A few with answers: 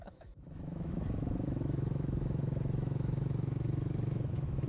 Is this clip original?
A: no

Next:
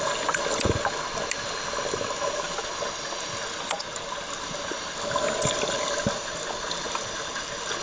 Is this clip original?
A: yes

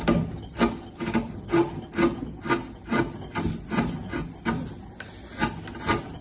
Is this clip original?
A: yes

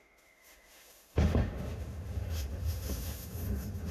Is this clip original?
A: no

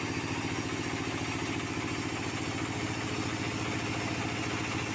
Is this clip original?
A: yes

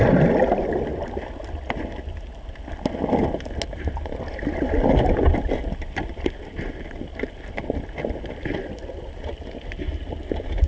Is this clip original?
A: yes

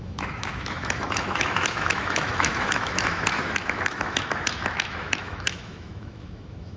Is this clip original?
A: no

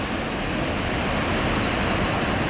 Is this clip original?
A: yes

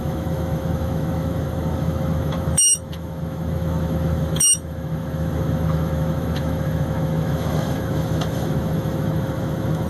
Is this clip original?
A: no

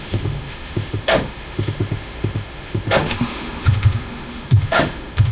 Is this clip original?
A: no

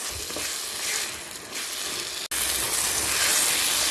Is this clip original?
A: yes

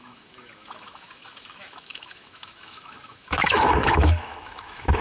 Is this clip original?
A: no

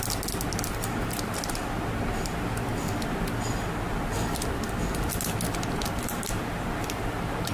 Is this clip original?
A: yes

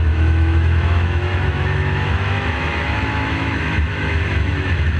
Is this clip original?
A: no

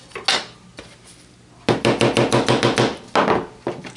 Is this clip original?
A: yes